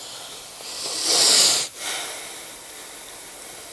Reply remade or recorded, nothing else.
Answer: recorded